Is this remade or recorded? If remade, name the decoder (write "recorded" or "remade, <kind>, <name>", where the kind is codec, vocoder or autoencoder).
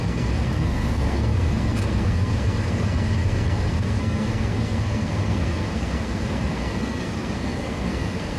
remade, codec, SNAC